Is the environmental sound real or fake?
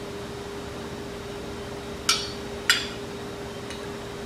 real